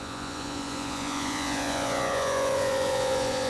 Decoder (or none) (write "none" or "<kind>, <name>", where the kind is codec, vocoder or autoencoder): vocoder, Vocos